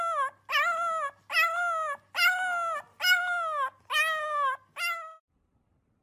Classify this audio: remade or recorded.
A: recorded